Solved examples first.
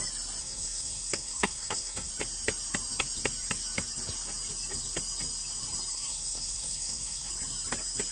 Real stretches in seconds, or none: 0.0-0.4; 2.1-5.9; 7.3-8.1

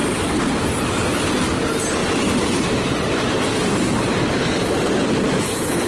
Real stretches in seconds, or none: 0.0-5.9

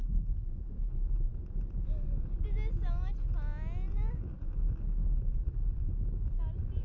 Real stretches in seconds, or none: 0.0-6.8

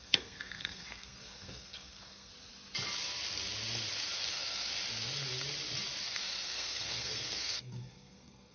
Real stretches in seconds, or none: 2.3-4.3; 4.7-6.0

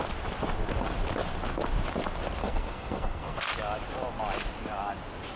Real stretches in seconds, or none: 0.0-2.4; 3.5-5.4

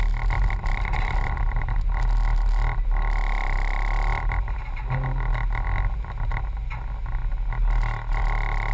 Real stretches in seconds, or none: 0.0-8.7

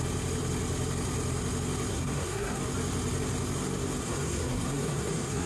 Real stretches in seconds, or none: 0.0-1.9; 2.6-4.0

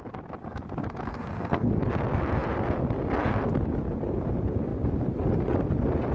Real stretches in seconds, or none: 0.0-1.1; 1.7-6.1